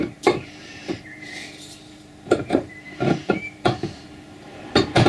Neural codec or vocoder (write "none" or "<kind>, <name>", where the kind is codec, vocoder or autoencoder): vocoder, BigVGAN v2